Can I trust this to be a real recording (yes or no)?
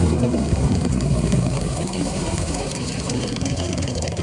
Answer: no